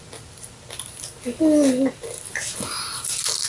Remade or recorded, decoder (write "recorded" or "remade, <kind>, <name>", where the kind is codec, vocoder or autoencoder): recorded